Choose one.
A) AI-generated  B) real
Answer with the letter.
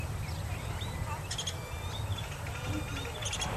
B